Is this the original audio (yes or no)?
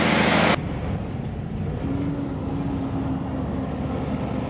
yes